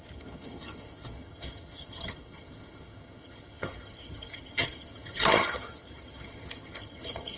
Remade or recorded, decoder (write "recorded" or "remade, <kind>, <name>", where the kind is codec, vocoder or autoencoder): remade, vocoder, HiFi-GAN